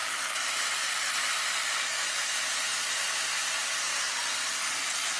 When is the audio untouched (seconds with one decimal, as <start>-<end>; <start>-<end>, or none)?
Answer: 3.1-3.9; 4.6-5.2